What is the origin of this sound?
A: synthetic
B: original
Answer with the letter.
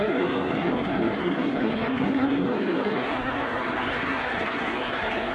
A